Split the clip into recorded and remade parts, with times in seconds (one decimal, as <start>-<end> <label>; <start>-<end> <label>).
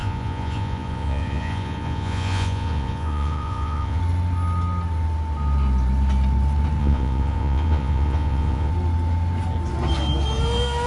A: 0.0-4.0 remade; 4.0-6.8 recorded; 6.8-8.7 remade; 8.7-10.9 recorded